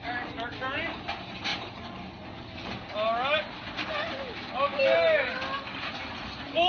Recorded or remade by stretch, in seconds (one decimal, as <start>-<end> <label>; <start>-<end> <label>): 0.0-6.7 recorded